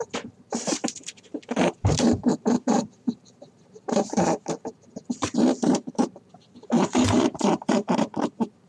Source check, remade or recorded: remade